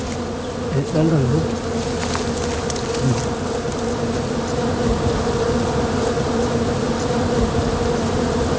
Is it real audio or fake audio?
real